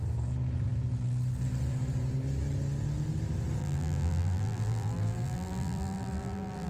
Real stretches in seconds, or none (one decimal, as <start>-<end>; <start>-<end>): 0.0-3.6